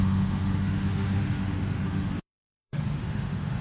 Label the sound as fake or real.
fake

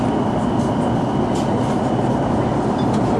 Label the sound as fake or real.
real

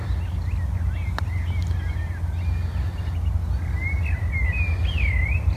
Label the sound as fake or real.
real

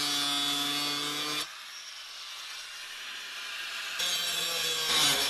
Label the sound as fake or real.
real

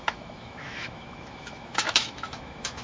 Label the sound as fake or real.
fake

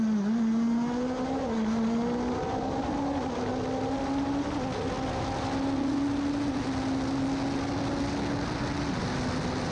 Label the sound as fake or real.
real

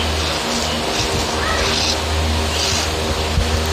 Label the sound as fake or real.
real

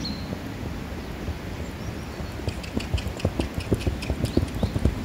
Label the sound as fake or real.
real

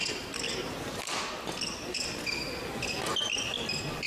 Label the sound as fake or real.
real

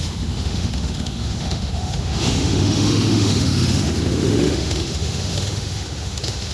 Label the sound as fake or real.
fake